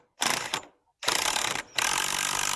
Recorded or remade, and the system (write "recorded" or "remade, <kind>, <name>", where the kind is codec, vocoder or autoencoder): recorded